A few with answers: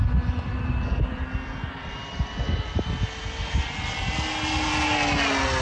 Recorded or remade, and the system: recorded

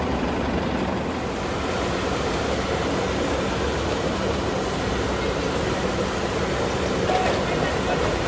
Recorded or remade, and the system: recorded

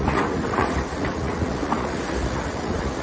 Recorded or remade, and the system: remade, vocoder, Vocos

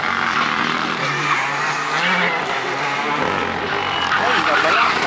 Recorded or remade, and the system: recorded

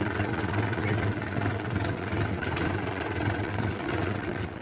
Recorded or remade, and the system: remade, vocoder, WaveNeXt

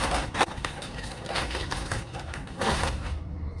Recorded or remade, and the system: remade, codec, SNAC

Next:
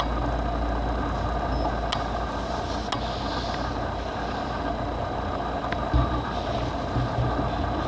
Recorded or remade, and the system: recorded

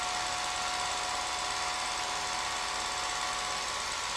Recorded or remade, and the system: recorded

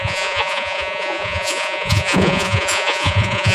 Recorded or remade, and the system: remade, vocoder, Vocos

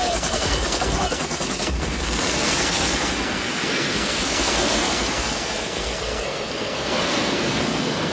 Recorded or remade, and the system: remade, codec, SNAC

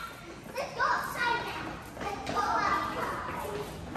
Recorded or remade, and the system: recorded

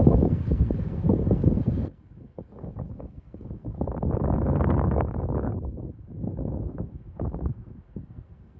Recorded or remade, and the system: remade, codec, SNAC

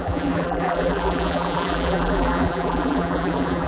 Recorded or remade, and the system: remade, vocoder, BigVGAN v2